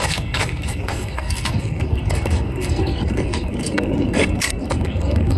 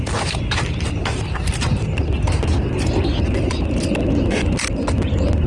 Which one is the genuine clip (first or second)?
second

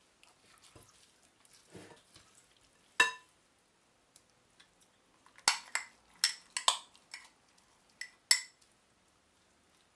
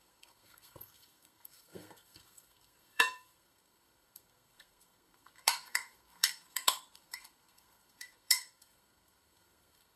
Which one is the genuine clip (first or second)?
first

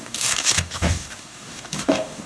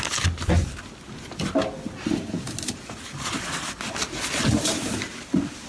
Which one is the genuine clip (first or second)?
second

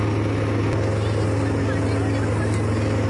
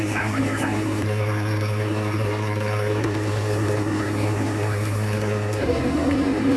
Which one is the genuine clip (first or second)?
first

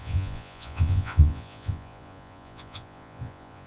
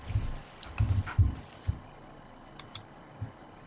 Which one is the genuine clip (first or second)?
second